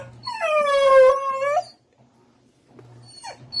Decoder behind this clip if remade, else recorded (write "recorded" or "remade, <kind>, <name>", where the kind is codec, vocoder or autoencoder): recorded